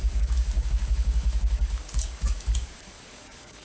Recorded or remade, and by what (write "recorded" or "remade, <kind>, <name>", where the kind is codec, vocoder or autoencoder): remade, codec, DAC